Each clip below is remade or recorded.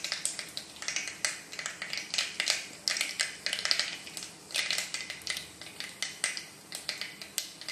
recorded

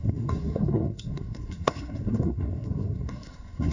remade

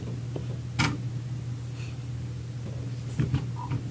recorded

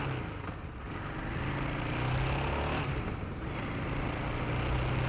recorded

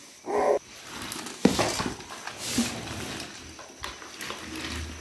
recorded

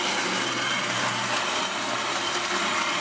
recorded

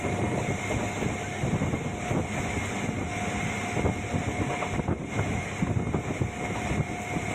recorded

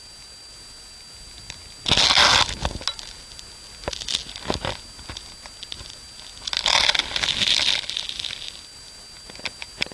recorded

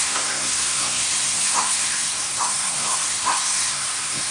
remade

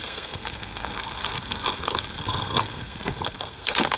remade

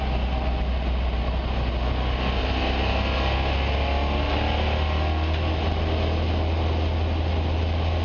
recorded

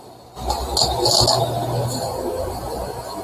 recorded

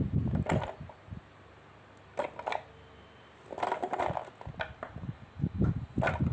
recorded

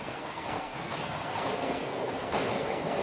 remade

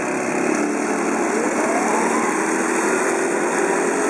recorded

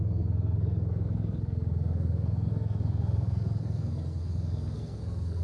remade